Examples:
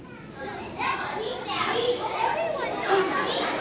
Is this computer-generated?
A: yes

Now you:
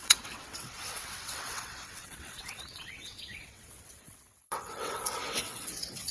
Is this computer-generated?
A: yes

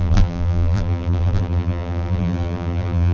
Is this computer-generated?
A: yes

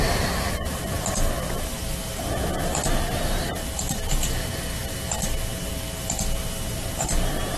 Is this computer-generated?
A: no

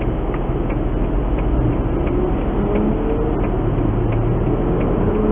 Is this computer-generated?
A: no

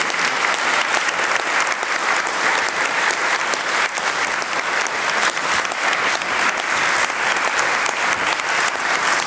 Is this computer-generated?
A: no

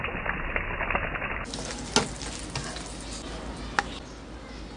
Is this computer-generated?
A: no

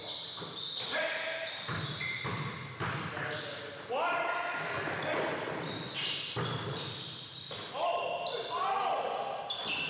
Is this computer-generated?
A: no